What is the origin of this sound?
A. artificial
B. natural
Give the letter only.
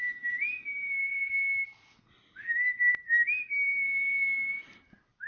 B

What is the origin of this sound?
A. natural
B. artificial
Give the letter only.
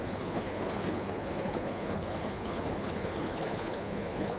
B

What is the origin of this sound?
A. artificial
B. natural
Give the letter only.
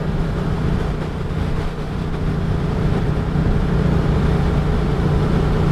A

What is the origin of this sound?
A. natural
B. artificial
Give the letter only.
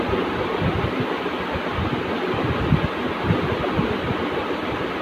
A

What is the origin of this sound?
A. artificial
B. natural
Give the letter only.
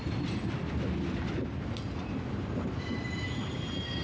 B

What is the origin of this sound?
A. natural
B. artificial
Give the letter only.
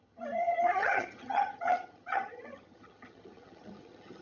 B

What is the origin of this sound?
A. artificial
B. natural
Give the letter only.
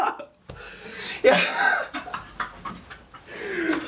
B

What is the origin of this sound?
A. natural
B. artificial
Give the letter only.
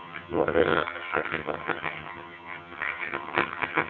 B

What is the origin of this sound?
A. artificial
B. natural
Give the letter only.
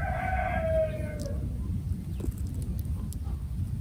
B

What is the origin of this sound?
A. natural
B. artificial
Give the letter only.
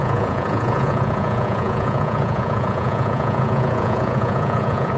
B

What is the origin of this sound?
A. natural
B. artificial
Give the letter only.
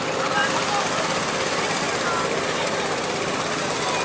A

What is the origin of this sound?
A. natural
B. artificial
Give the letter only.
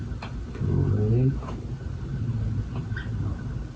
A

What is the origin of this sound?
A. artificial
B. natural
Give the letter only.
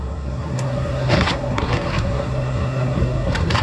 A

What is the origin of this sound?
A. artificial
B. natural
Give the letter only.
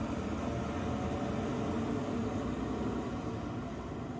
B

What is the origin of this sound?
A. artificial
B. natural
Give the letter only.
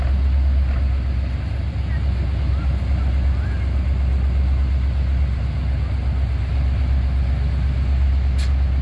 B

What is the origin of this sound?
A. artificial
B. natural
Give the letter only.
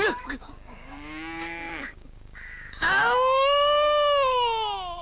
A